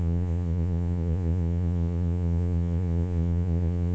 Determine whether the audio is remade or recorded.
remade